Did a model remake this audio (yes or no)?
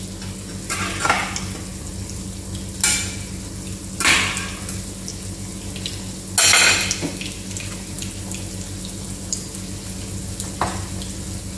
no